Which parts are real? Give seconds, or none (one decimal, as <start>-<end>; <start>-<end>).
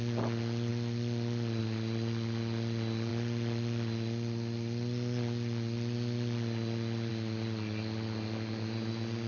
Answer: 0.0-9.3